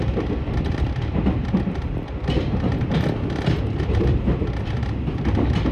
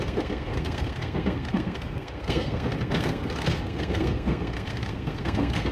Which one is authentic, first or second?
first